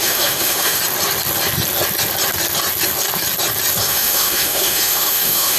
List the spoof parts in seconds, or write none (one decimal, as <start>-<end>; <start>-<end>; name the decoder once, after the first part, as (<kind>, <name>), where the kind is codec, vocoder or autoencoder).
0.0-0.8 (autoencoder, DAC-VAE); 3.8-5.6